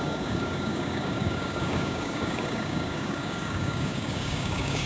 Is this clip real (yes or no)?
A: no